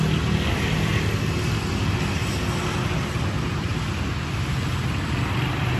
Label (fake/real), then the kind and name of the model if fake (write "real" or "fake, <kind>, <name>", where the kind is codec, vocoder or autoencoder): real